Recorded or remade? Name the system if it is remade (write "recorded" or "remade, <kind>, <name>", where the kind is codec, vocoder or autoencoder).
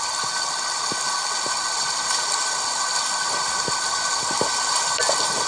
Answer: recorded